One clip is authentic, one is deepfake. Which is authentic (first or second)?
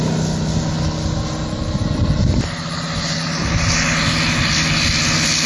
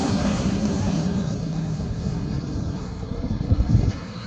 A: first